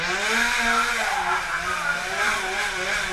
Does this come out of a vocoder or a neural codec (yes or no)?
no